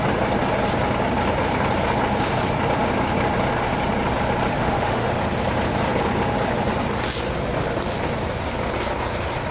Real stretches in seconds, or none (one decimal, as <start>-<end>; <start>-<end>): 0.0-4.5; 5.1-9.5

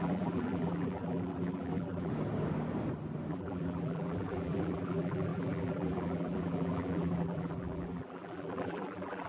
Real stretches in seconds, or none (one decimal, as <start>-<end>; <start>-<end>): 2.1-3.3

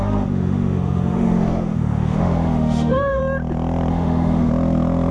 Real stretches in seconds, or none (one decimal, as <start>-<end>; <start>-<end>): 3.2-3.9; 4.5-5.1